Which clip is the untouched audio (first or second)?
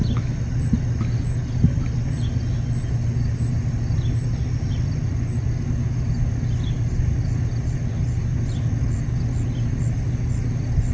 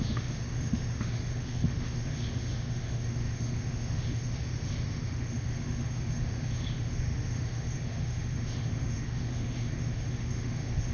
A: first